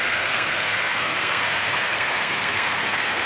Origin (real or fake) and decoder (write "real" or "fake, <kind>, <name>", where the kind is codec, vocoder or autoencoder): fake, codec, SNAC